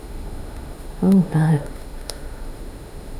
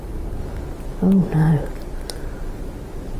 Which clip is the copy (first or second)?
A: first